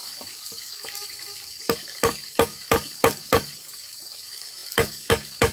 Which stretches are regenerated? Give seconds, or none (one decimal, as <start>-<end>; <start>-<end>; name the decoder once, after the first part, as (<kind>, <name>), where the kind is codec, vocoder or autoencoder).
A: 0.0-5.5 (codec, DAC)